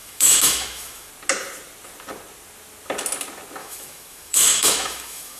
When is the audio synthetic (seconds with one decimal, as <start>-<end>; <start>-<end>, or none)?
0.0-1.1; 3.6-5.4